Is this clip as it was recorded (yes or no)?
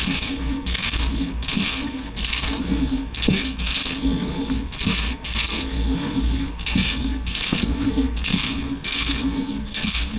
no